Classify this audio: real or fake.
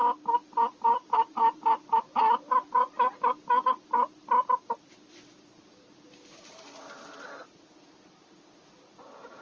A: real